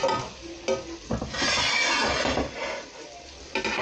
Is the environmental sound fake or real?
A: real